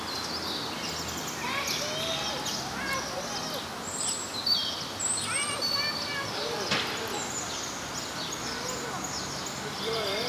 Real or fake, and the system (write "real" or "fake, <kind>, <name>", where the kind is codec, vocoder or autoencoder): real